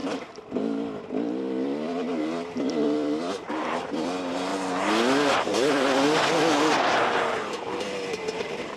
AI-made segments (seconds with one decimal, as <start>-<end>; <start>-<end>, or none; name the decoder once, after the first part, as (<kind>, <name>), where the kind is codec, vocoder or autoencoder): 0.0-4.5 (vocoder, BigVGAN v2); 8.4-8.8